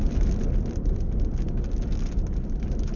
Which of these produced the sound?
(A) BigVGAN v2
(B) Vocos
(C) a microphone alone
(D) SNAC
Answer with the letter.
C